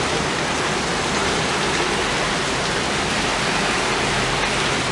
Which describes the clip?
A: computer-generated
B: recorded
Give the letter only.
B